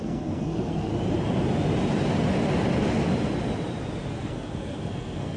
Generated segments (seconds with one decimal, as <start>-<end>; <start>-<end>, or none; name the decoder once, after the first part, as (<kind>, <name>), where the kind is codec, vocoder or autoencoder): 0.0-0.9 (codec, SNAC); 4.1-5.4